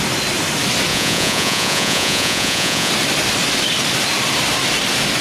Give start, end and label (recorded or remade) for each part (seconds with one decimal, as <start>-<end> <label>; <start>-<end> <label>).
0.0-0.9 recorded; 0.9-2.9 remade; 2.9-5.2 recorded